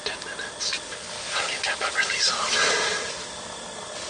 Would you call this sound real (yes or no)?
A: yes